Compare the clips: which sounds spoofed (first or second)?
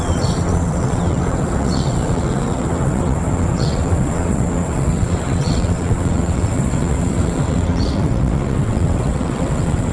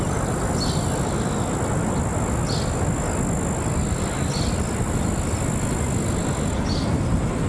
first